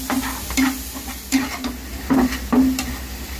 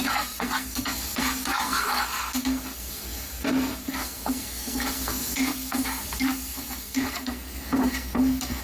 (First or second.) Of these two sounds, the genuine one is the first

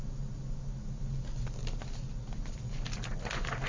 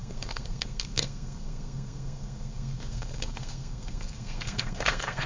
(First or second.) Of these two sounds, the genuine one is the first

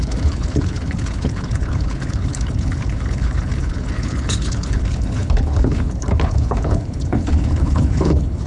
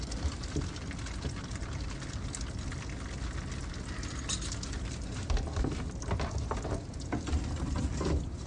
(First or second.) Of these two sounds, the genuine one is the second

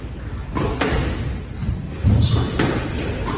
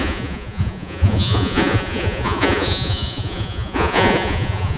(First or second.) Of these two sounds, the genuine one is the first